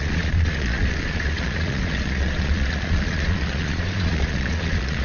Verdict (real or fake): fake